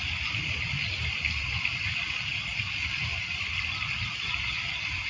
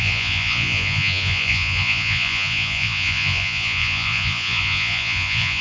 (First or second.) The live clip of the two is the first